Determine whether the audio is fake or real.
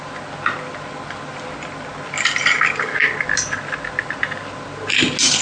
real